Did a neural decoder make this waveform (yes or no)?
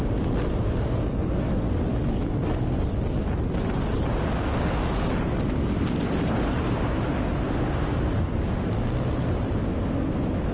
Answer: no